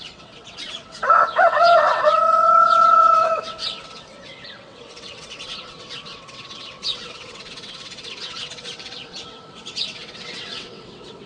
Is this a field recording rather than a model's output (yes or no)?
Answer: no